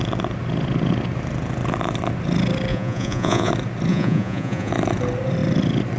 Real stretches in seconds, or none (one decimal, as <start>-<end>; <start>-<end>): 0.0-2.7; 3.5-3.9; 4.7-6.0